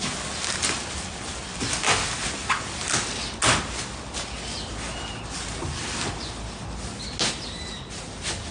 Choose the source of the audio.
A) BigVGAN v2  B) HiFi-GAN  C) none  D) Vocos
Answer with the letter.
C